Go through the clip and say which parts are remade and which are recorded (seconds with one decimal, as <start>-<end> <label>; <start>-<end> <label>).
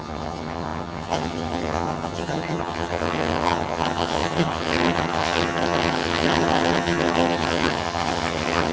0.0-8.7 remade